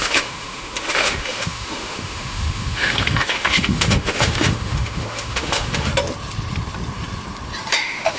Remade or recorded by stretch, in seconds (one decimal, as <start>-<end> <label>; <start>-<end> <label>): 0.0-5.9 remade; 5.9-7.7 recorded; 7.7-8.2 remade